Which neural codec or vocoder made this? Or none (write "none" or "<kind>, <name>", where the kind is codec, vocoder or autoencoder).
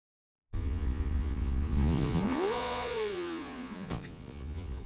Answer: vocoder, Vocos